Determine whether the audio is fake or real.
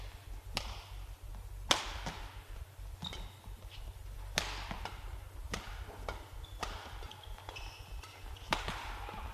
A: real